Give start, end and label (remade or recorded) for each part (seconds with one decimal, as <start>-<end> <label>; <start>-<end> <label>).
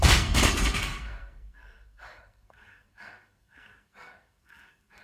0.0-5.0 remade